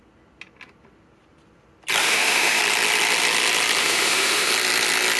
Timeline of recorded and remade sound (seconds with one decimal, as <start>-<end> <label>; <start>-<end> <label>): 0.0-2.0 recorded; 2.0-2.6 remade; 2.6-3.8 recorded; 3.8-4.5 remade; 4.5-5.2 recorded